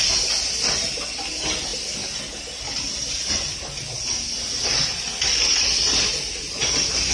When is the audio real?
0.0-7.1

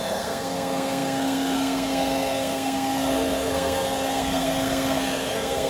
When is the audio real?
none

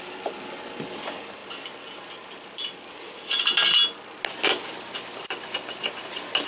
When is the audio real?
0.0-6.5

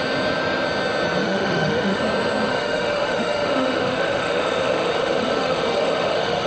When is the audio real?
0.0-1.2; 2.0-2.5

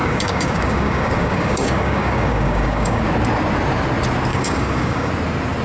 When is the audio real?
3.0-4.3; 5.1-5.6